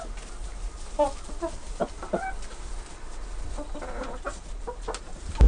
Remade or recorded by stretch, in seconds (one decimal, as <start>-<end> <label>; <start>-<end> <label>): 0.0-5.5 recorded